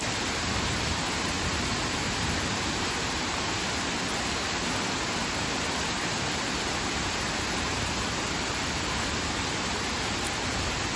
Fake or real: fake